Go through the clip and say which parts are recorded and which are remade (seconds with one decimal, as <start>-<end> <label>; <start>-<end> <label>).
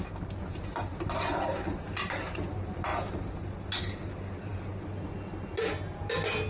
0.0-6.5 recorded